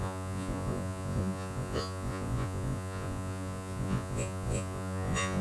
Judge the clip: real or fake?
fake